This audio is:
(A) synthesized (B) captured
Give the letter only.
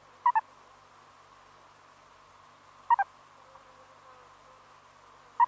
B